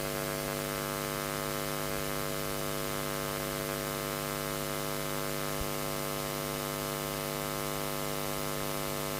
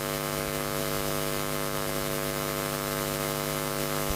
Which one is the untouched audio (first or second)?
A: first